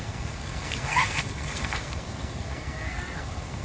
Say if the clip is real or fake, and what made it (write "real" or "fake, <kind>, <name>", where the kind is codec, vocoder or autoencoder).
fake, codec, SNAC